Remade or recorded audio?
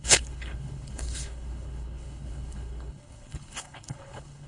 remade